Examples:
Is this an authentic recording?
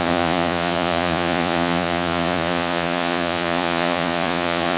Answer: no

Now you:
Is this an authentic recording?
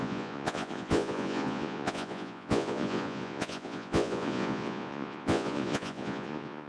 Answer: no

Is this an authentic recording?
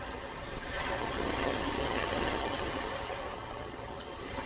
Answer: no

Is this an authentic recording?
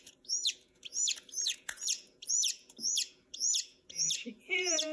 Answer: no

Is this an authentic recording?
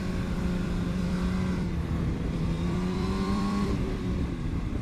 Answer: no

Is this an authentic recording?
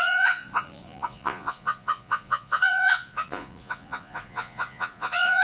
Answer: no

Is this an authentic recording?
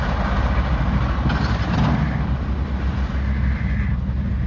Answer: yes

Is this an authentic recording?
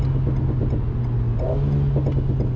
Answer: yes